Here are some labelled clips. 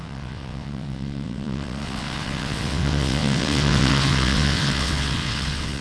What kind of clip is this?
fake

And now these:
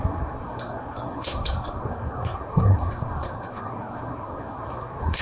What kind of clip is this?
fake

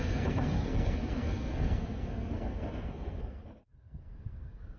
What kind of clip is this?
fake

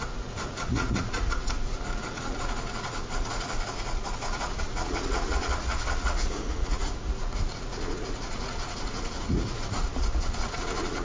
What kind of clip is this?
fake